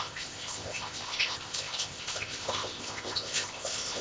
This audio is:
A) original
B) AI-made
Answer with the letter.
B